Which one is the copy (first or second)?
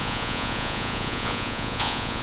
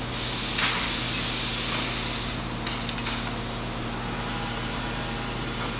first